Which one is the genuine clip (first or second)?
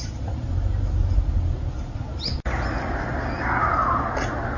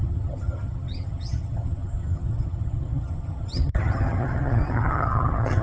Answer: first